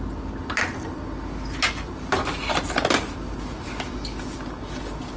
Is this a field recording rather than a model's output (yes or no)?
yes